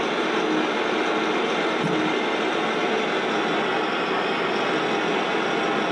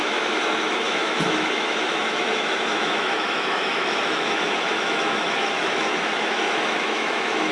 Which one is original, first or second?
first